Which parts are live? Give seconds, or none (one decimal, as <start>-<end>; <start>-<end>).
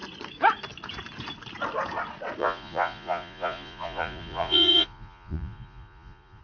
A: 0.0-2.4